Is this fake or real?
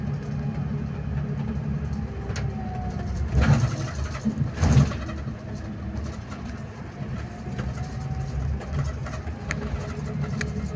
real